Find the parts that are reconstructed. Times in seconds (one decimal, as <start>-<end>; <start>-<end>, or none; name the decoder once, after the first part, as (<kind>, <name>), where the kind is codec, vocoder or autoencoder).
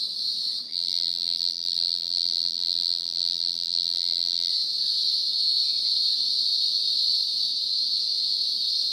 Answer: 0.7-4.5 (vocoder, BigVGAN v2)